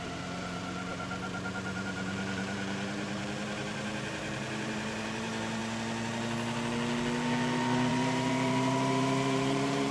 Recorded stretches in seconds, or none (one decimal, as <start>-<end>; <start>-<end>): 5.6-7.9